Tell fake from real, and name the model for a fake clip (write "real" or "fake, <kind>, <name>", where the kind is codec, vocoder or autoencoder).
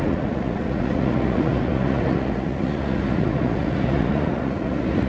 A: fake, vocoder, Vocos